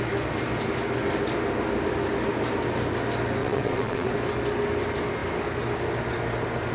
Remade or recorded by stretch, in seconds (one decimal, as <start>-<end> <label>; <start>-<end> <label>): 0.0-3.4 recorded; 3.4-4.1 remade; 4.1-6.7 recorded